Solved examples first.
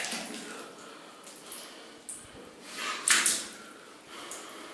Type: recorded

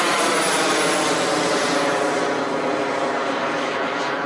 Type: recorded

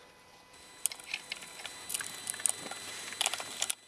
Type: recorded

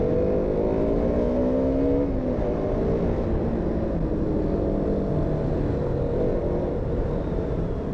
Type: recorded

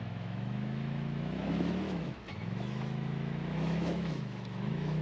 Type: remade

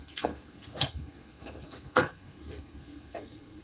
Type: remade